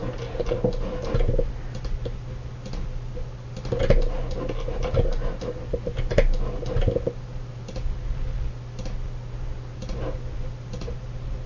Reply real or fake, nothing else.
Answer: real